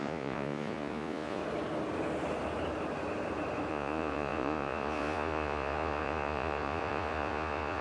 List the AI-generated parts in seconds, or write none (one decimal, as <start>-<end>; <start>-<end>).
0.0-1.4; 3.7-7.8